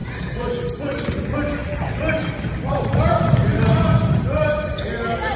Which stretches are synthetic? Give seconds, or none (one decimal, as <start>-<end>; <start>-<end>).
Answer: none